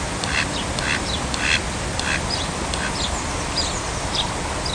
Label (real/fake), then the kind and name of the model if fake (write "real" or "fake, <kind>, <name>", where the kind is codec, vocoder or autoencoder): real